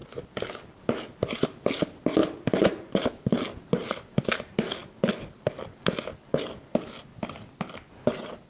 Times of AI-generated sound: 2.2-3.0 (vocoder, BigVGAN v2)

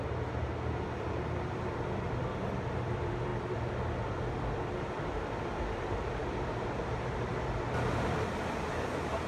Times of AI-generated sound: 0.0-9.3 (vocoder, BigVGAN v2)

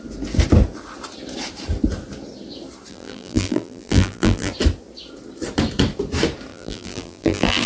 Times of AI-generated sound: 2.9-4.5 (vocoder, BigVGAN v2); 6.5-7.7

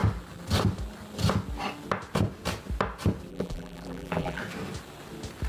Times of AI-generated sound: 3.3-4.4 (vocoder, BigVGAN v2)

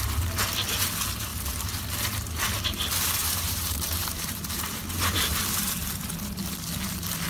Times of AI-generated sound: 1.3-1.9 (vocoder, BigVGAN v2); 3.2-5.4

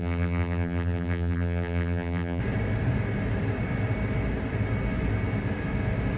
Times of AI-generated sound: 0.0-2.4 (vocoder, BigVGAN v2)

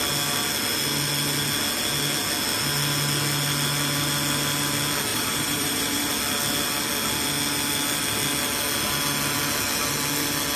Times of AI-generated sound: 5.1-6.1 (vocoder, BigVGAN v2)

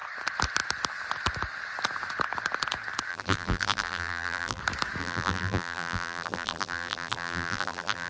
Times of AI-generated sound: 3.1-4.6 (vocoder, BigVGAN v2); 5.0-8.1